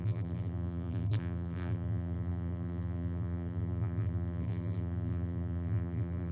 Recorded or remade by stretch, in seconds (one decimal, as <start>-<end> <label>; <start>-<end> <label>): 0.0-6.3 remade